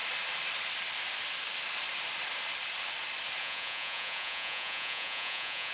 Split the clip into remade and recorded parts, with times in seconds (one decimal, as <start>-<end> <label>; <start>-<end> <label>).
0.0-3.4 recorded; 3.4-5.7 remade